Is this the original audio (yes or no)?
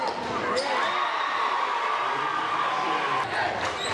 yes